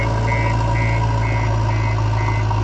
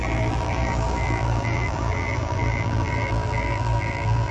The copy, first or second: second